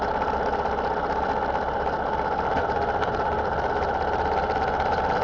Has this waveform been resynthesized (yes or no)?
no